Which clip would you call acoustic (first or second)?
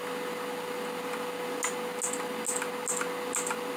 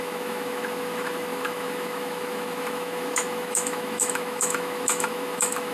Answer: first